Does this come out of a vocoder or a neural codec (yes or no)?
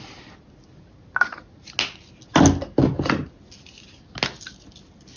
no